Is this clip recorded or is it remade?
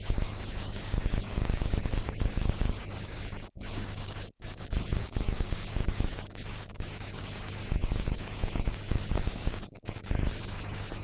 remade